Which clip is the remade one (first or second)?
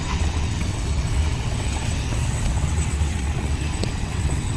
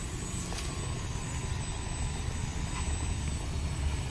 first